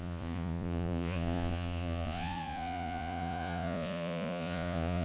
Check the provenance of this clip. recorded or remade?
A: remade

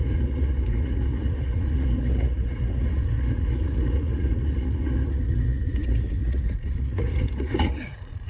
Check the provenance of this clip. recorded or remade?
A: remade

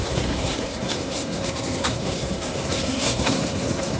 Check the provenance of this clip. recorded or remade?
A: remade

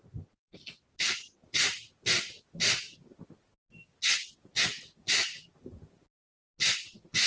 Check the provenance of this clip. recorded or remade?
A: recorded